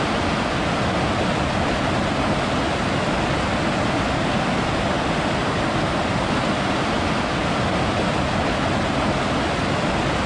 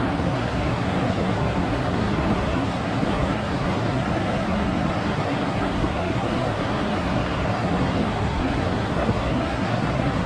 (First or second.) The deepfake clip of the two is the second